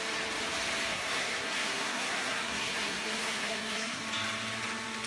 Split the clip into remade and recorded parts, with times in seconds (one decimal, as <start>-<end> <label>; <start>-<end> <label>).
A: 0.0-0.9 recorded; 0.9-4.0 remade; 4.0-5.1 recorded